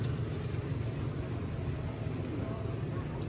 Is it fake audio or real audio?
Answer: real